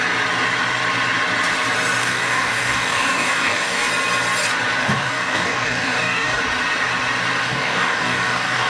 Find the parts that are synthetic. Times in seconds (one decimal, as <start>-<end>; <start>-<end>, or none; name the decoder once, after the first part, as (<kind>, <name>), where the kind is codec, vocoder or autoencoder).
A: 2.0-3.9 (codec, DAC); 4.8-6.4; 7.4-8.7